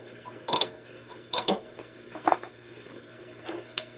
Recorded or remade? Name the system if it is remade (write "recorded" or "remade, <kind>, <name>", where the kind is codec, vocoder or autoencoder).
remade, codec, SNAC